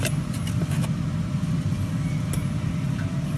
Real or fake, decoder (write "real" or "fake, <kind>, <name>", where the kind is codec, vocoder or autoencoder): real